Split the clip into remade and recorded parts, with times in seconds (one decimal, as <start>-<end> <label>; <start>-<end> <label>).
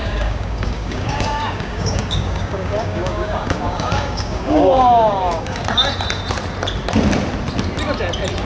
0.0-5.6 remade; 5.6-8.4 recorded